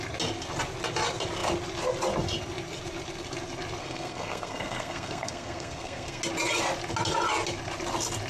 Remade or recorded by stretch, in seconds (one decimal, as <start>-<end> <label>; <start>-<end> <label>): 0.0-3.8 recorded; 3.8-6.2 remade; 6.2-8.3 recorded